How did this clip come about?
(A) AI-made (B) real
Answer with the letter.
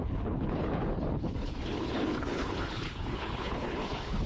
A